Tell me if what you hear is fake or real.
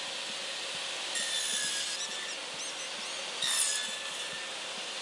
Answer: real